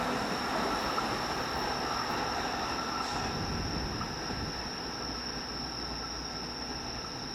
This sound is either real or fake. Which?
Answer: real